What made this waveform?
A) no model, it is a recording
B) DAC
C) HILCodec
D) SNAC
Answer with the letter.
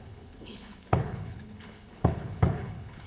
C